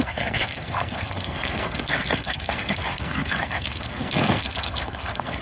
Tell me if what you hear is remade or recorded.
remade